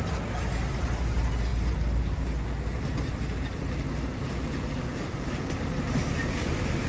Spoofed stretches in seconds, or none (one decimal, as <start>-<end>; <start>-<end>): none